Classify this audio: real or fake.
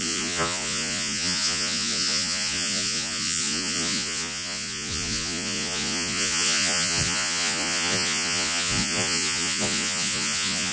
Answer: fake